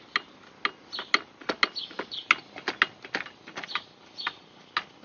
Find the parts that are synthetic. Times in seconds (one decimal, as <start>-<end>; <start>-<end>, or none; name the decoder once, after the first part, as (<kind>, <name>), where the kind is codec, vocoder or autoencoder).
none